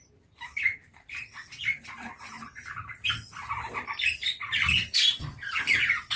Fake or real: fake